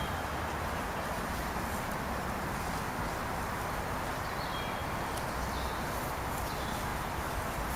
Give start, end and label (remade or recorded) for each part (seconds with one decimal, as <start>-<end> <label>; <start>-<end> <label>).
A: 0.0-7.8 recorded